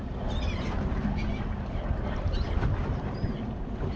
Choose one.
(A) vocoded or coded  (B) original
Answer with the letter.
B